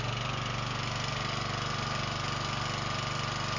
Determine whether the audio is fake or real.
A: real